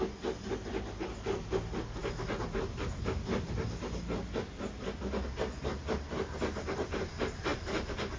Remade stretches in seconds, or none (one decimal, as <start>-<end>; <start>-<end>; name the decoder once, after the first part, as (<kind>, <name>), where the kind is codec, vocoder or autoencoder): 7.5-8.2 (vocoder, BigVGAN v2)